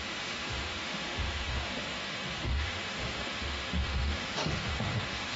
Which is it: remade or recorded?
remade